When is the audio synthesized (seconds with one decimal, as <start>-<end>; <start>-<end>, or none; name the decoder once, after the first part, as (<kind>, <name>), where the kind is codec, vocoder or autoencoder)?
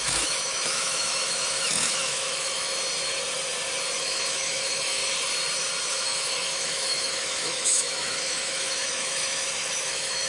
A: 0.0-2.7 (autoencoder, DAC-VAE); 4.0-5.0; 5.9-10.3